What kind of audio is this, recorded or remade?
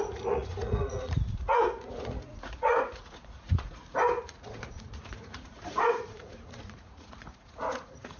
remade